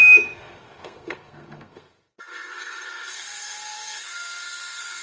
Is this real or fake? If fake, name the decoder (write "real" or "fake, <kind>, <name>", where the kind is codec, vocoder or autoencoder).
fake, codec, SNAC